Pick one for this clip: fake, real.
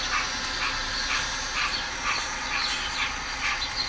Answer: real